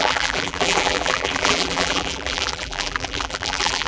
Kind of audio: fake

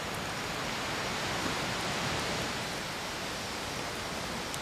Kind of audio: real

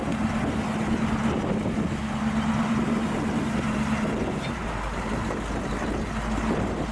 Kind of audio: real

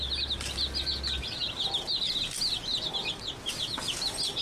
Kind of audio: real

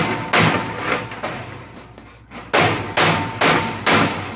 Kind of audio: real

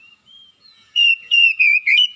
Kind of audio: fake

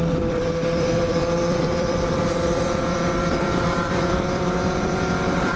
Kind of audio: fake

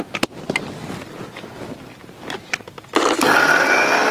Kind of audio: real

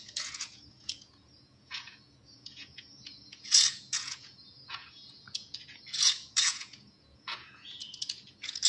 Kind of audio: fake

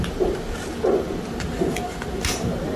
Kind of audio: real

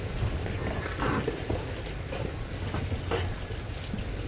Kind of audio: real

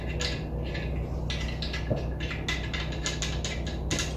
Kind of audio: real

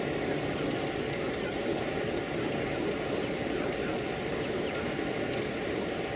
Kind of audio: real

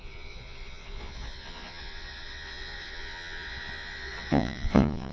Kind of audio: fake